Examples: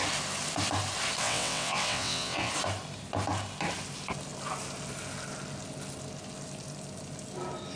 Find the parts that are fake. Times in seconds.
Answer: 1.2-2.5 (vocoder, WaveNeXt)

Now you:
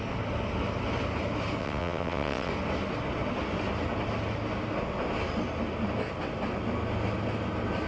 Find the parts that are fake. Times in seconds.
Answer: 1.6-2.5 (vocoder, WaveNeXt)

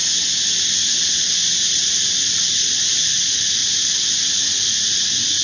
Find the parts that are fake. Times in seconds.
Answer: none

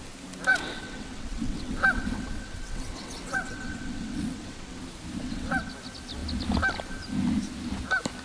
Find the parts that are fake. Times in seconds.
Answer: 0.5-4.8 (vocoder, WaveNeXt); 5.2-5.7

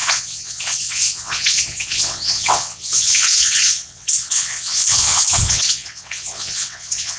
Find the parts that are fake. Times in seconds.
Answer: 0.0-7.2 (vocoder, WaveNeXt)

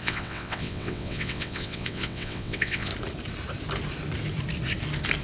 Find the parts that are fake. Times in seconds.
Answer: 0.0-2.9 (vocoder, WaveNeXt)

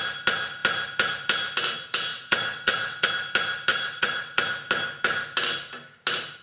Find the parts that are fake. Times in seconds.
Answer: 2.1-3.1 (vocoder, WaveNeXt); 3.7-4.4